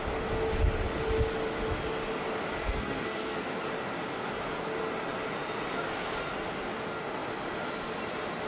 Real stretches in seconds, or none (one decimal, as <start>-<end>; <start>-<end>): 0.0-2.6; 3.7-8.5